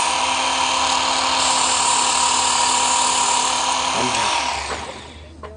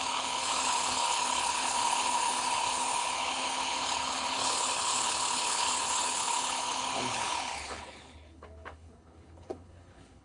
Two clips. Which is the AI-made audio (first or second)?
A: second